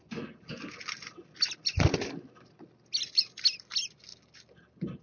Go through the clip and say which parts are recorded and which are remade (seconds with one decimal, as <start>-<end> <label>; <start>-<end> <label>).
0.0-5.0 recorded